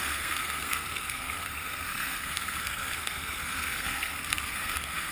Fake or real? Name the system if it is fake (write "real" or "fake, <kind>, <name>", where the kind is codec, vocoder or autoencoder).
fake, codec, SNAC